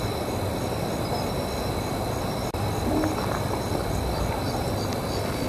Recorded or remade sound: recorded